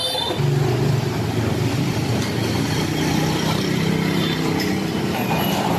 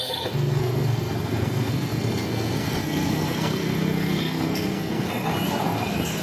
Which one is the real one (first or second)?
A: first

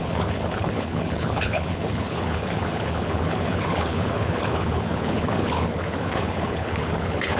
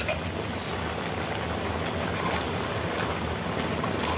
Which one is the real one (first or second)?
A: second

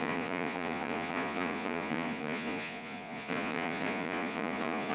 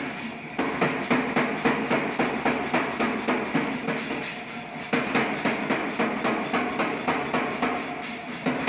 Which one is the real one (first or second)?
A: second